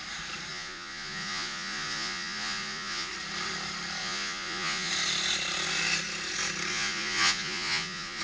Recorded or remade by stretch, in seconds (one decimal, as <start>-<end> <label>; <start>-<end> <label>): 0.0-0.5 recorded; 0.5-3.1 remade; 3.1-4.0 recorded; 4.0-4.9 remade; 4.9-6.7 recorded; 6.7-8.2 remade